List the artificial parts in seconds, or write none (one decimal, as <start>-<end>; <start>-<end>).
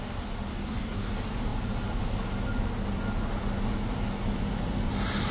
0.5-1.1